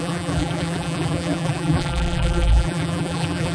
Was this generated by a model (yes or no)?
yes